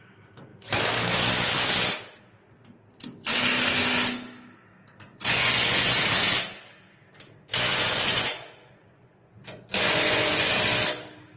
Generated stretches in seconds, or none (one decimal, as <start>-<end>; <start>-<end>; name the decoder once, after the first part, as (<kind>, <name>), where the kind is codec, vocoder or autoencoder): 5.1-6.0 (vocoder, Vocos); 7.7-10.5